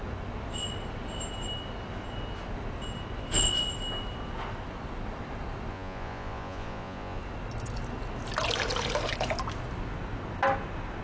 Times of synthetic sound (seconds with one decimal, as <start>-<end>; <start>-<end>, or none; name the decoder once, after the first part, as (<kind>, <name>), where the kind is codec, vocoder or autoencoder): 5.7-7.2 (vocoder, Vocos)